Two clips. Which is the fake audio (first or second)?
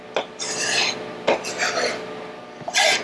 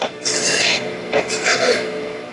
second